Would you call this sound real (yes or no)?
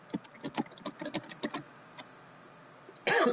yes